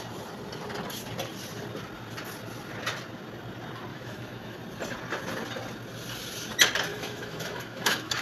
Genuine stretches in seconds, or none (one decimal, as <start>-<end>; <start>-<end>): 0.0-3.9; 4.6-6.9